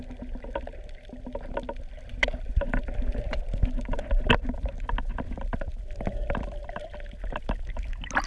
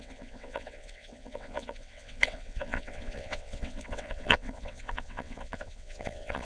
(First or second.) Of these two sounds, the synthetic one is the second